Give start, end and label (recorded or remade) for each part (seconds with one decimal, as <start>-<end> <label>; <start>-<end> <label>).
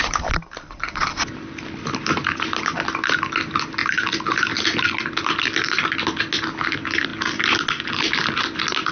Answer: 0.0-3.8 recorded; 3.8-4.5 remade; 4.5-8.9 recorded